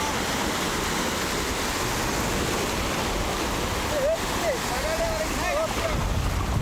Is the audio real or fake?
real